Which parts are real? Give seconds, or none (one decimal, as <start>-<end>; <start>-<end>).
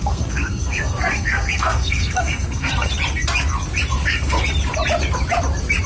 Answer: 2.9-3.9; 4.4-5.9